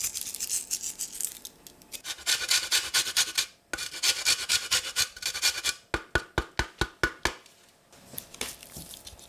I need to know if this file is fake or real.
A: real